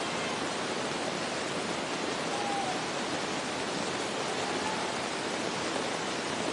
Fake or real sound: real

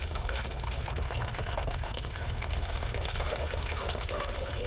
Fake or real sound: fake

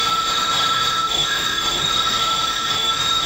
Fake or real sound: fake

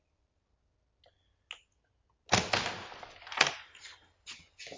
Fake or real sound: real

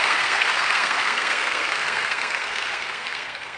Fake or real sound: fake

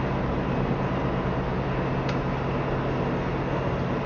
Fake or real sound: real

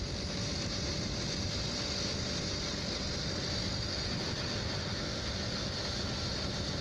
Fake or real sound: real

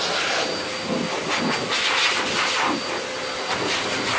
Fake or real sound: real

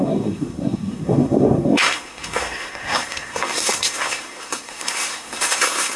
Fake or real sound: fake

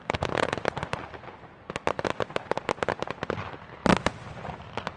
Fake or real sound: real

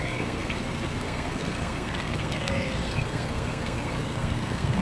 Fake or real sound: fake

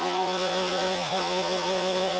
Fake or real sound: fake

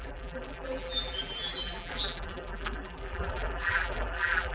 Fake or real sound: fake